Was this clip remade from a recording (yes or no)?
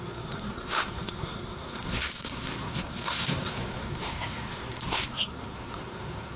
yes